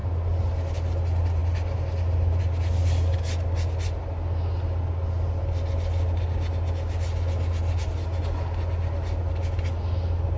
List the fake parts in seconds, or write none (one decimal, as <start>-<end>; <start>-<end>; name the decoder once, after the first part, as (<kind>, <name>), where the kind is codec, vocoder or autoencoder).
none